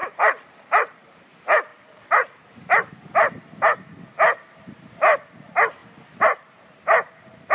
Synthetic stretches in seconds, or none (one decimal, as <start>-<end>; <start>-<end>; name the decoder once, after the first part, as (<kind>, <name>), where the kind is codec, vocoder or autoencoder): 0.0-1.0 (vocoder, BigVGAN v2); 1.7-2.9